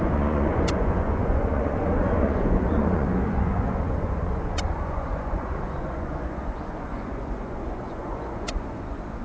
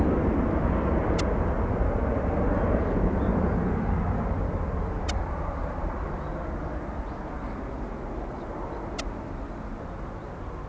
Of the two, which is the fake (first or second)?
first